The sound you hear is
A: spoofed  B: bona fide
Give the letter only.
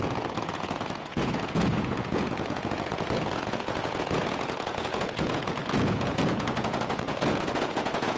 A